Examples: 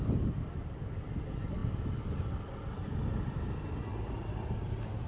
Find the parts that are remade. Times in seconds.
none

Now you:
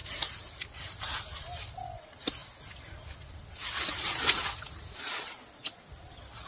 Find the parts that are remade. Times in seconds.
none

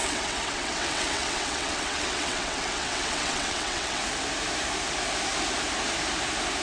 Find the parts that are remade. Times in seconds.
0.0-4.0 (vocoder, WaveNeXt)

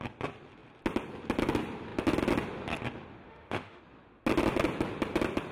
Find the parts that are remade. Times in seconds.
3.3-3.8 (autoencoder, DAC-VAE)

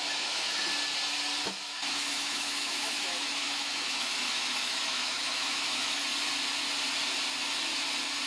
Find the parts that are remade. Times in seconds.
0.0-0.7 (autoencoder, DAC-VAE); 1.4-6.0

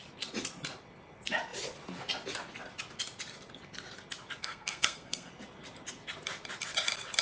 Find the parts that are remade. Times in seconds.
4.4-5.3 (codec, SNAC)

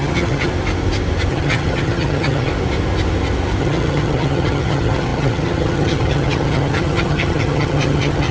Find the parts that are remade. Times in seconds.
0.0-0.5 (vocoder, HiFi-GAN); 1.3-2.5; 3.6-8.3

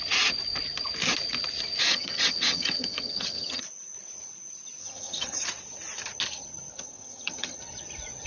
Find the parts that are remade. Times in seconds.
1.9-3.6 (vocoder, HiFi-GAN); 4.8-5.4; 6.7-7.6